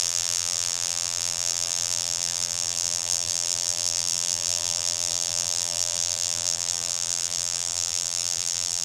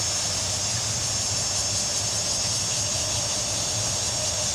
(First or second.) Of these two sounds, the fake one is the first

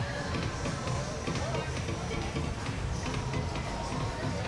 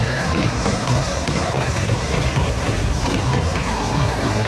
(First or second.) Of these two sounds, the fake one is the second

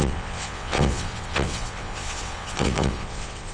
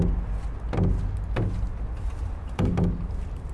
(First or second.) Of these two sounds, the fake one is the first